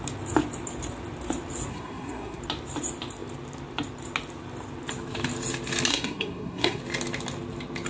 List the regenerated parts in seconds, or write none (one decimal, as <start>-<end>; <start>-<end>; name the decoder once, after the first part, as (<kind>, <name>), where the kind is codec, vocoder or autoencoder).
1.7-2.4 (codec, SNAC); 5.9-6.8